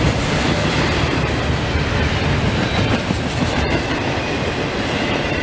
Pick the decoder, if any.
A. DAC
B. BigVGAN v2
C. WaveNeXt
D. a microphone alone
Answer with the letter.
B